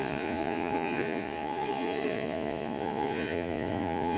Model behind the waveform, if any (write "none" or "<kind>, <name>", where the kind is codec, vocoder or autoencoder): vocoder, Vocos